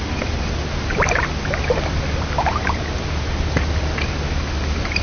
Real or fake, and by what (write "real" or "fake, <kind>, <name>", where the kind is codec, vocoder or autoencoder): real